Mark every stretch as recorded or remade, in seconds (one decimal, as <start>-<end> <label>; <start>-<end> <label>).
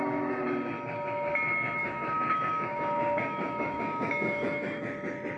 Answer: 0.0-1.8 recorded; 1.8-4.8 remade; 4.8-5.4 recorded